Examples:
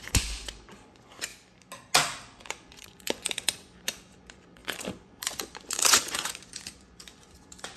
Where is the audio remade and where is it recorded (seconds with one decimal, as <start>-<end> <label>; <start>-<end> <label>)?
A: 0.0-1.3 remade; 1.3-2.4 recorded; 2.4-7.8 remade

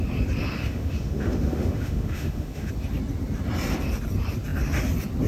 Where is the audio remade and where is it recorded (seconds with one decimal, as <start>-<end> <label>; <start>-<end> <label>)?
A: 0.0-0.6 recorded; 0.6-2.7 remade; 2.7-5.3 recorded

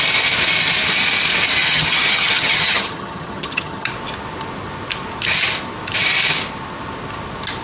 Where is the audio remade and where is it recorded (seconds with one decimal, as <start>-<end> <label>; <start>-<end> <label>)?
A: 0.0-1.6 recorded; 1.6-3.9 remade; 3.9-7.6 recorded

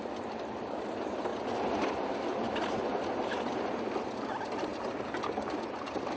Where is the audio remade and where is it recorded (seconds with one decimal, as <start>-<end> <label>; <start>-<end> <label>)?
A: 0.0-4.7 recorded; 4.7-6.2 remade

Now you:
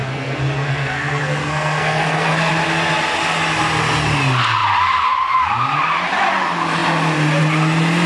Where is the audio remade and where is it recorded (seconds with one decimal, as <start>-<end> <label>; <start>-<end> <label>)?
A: 0.0-2.5 remade; 2.5-8.1 recorded

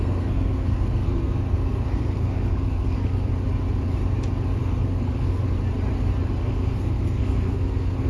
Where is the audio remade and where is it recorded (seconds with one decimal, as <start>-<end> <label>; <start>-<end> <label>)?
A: 0.0-3.3 remade; 3.3-4.6 recorded; 4.6-5.4 remade; 5.4-6.4 recorded; 6.4-8.1 remade